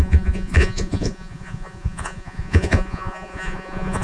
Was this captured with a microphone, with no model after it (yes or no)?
no